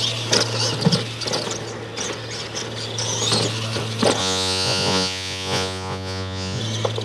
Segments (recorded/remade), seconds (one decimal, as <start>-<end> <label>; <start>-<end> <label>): 0.0-4.2 recorded; 4.2-6.6 remade; 6.6-7.0 recorded